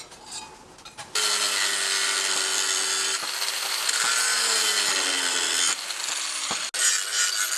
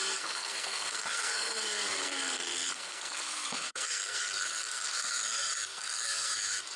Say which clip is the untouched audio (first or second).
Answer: first